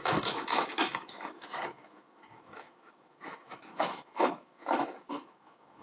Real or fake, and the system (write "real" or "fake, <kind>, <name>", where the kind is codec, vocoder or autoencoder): fake, autoencoder, DAC-VAE